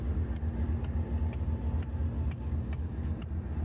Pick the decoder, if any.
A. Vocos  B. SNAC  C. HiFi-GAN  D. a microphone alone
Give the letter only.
D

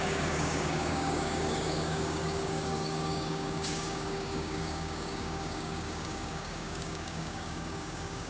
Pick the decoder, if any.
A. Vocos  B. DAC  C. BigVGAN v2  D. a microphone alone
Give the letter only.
B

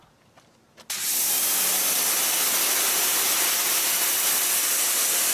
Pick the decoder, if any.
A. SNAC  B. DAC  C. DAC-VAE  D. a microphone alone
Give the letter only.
D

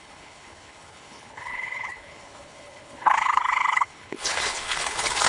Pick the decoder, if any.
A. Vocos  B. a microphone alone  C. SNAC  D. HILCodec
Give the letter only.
D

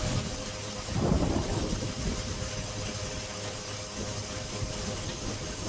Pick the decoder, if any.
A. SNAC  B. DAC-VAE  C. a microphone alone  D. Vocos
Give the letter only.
C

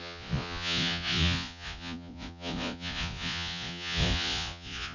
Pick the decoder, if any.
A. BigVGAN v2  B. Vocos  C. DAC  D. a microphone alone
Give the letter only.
B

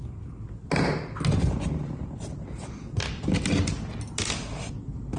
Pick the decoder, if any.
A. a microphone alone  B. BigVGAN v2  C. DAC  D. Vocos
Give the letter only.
A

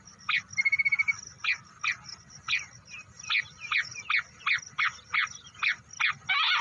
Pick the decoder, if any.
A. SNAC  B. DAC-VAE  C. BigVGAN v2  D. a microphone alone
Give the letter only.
D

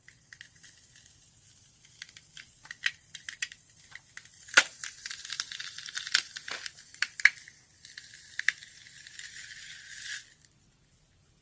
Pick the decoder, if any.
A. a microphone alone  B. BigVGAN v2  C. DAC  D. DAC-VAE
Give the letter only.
B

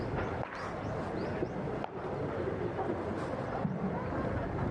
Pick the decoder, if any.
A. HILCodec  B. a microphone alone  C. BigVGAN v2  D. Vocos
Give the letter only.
C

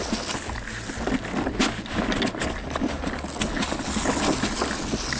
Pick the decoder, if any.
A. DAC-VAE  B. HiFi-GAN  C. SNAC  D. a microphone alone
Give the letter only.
D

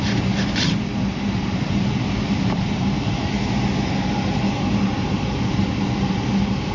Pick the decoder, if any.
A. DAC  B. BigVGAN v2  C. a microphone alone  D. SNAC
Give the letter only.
C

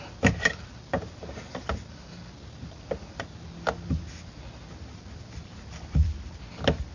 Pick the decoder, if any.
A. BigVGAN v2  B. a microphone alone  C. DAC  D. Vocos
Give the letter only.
B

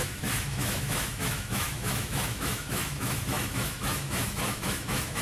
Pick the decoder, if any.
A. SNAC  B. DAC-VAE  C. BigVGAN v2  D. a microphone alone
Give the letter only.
B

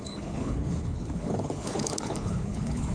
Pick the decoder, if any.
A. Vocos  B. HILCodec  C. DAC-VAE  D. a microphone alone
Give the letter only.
B